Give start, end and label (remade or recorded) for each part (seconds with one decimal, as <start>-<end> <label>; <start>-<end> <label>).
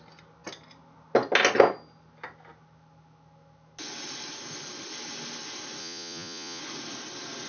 0.0-5.8 recorded; 5.8-6.6 remade; 6.6-7.5 recorded